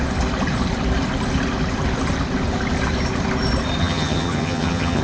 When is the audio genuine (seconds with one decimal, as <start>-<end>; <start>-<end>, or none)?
0.0-3.8